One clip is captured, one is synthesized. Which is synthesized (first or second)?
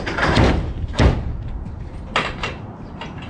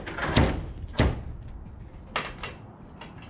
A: first